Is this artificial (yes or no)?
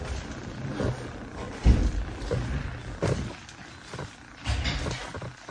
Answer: no